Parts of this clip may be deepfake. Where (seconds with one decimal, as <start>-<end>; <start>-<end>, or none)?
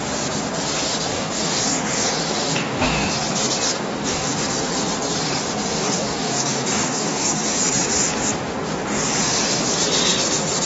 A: 1.1-1.6; 2.4-3.1; 3.7-4.4; 5.7-7.6